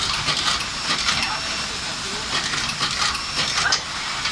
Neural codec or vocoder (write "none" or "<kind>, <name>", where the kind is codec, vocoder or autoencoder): none